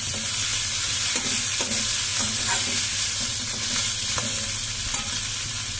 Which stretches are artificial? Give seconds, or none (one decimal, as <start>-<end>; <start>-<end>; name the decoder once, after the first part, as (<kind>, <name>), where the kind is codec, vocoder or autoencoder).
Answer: none